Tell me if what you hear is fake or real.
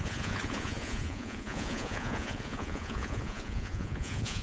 fake